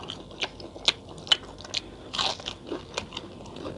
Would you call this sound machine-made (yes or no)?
no